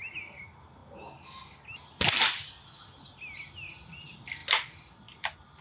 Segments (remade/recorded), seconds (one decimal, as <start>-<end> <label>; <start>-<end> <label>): 0.0-5.6 recorded